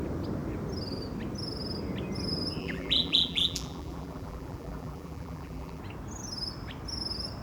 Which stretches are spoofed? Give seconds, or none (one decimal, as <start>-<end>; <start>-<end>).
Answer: 2.6-5.8

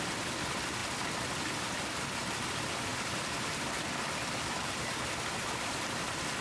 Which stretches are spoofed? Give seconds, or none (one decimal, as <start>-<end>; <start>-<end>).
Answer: none

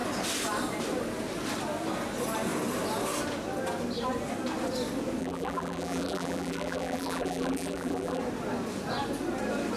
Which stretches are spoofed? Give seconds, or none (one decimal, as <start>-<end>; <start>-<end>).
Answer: 5.2-8.2

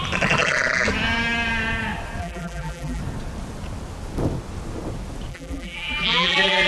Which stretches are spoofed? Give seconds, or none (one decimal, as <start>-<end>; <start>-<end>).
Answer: 2.2-3.0; 5.3-6.7